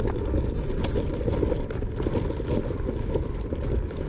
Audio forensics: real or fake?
real